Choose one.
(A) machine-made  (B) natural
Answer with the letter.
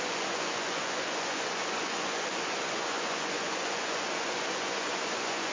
A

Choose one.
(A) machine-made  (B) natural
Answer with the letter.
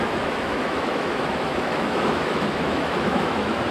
A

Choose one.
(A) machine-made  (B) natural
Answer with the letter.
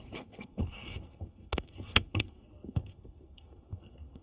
A